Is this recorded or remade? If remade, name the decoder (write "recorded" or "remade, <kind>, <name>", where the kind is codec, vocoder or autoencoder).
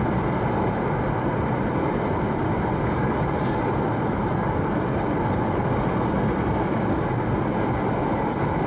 recorded